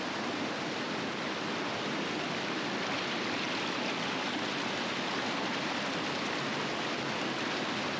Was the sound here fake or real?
real